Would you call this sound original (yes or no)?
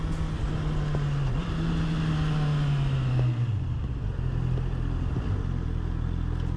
yes